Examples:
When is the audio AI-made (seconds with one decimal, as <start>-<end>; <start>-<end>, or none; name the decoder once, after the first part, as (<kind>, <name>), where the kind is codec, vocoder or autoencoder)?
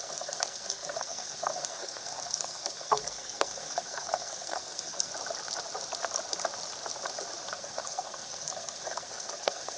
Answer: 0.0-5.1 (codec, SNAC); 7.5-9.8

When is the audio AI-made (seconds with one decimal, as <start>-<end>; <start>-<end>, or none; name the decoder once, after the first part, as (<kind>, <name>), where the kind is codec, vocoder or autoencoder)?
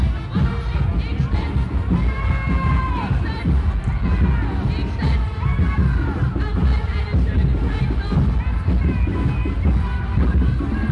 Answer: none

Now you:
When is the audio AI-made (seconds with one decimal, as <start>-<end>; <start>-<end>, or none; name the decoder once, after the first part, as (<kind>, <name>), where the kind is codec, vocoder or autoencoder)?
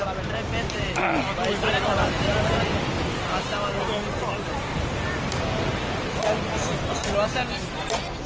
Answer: none